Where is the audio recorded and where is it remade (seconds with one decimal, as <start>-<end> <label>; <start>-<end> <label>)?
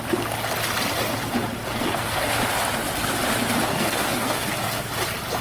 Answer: 0.0-1.7 recorded; 1.7-2.4 remade; 2.4-3.7 recorded; 3.7-4.9 remade; 4.9-5.4 recorded